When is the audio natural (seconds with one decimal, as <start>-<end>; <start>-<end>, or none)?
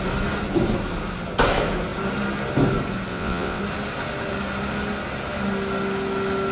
0.0-3.1; 3.6-6.5